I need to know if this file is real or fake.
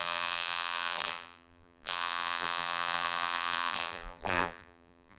fake